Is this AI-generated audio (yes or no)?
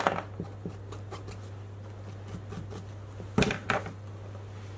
no